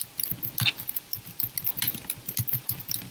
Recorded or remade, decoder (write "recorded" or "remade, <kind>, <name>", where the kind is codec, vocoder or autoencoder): recorded